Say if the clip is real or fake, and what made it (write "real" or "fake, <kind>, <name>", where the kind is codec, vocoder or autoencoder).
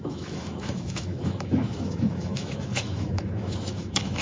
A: fake, autoencoder, DAC-VAE